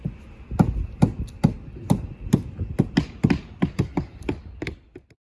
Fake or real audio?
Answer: real